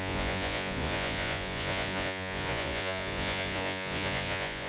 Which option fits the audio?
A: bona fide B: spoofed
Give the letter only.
B